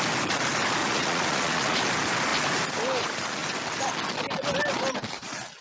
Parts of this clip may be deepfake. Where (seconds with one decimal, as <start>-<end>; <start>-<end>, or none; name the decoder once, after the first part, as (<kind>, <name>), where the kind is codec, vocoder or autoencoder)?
0.8-1.8 (vocoder, Vocos)